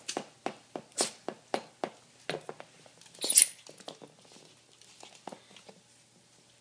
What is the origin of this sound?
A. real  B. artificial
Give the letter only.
A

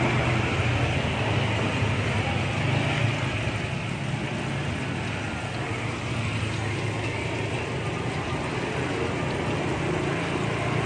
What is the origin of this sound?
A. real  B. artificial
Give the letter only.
A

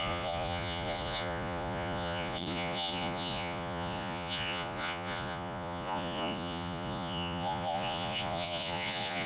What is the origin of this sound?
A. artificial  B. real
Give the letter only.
A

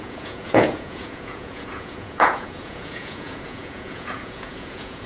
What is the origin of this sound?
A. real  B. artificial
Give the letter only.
B